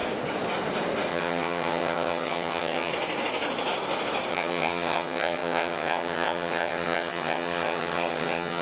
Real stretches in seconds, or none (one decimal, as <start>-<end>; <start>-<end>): 0.0-1.1; 2.9-4.3